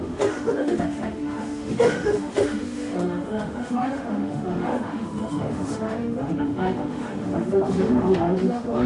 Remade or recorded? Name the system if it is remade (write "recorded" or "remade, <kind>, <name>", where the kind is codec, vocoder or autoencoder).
remade, autoencoder, DAC-VAE